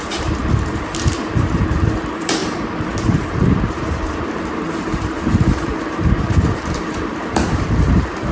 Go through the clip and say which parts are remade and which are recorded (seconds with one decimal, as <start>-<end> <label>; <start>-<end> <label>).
0.0-8.3 remade